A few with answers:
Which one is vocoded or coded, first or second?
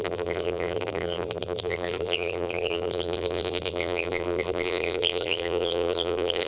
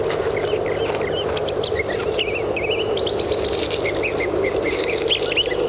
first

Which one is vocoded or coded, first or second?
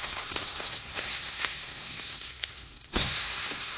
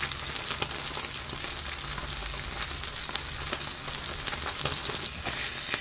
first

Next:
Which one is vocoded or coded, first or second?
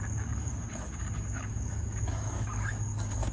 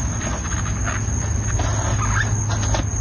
first